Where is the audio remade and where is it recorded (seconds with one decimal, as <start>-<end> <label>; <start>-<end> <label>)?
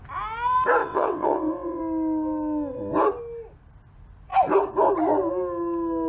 0.0-0.8 recorded; 0.8-1.8 remade; 1.8-6.1 recorded